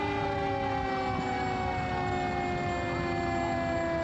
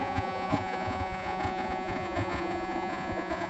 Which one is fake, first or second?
second